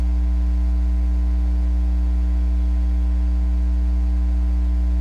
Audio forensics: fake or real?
real